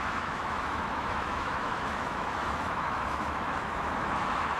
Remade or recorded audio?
remade